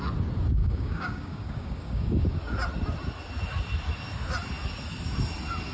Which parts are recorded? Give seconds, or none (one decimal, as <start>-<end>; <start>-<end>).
0.0-0.6; 2.4-5.7